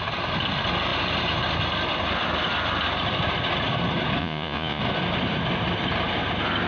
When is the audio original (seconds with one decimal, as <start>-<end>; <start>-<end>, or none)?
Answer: 0.0-4.2; 4.8-6.7